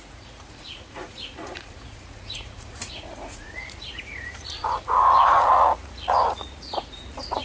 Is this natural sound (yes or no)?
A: no